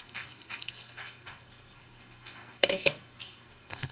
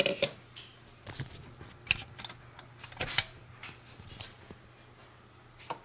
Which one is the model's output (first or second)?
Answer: first